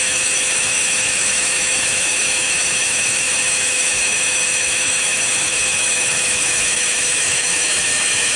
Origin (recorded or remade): remade